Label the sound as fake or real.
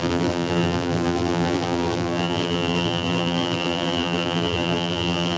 fake